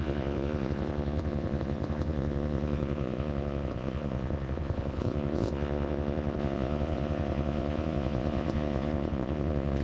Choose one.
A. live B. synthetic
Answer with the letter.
B